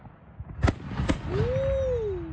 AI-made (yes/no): no